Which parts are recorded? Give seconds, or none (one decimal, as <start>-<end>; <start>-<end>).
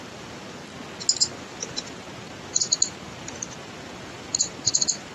0.6-1.2